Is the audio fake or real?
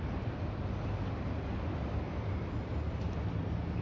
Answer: real